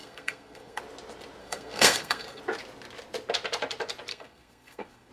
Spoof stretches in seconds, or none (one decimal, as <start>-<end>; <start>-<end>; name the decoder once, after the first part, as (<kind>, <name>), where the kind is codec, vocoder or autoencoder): 0.0-0.8 (codec, SNAC); 1.4-2.4; 4.1-5.1